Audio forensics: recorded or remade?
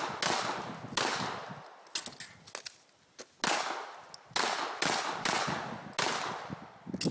recorded